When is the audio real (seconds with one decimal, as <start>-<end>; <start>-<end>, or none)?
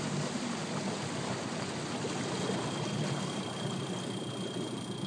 0.0-5.1